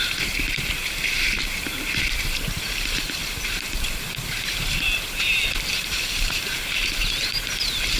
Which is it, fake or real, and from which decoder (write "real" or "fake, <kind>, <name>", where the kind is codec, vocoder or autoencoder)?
fake, vocoder, BigVGAN v2